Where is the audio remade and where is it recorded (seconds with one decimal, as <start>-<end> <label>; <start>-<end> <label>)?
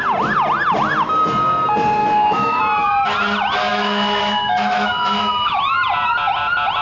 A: 0.0-2.0 recorded; 2.0-2.6 remade; 2.6-3.7 recorded; 3.7-5.6 remade; 5.6-6.8 recorded